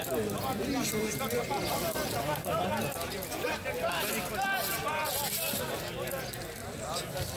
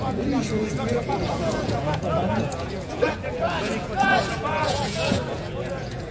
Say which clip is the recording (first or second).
first